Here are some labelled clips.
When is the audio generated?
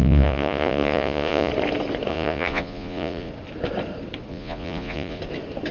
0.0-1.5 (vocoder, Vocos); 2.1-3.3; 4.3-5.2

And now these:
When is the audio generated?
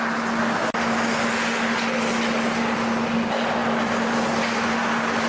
none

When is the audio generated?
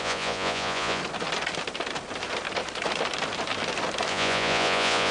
0.0-1.0 (vocoder, Vocos); 4.1-5.1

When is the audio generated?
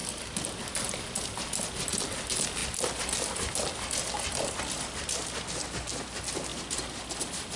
none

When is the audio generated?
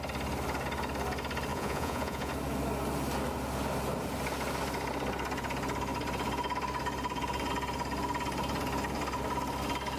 1.5-2.3 (vocoder, Vocos)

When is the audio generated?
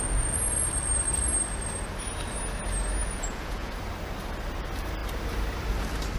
3.0-3.7 (vocoder, Vocos)